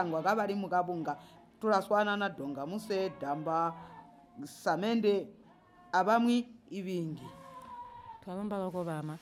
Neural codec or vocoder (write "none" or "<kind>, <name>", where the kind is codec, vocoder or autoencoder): none